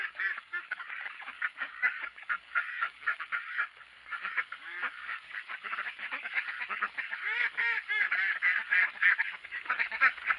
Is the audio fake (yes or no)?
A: yes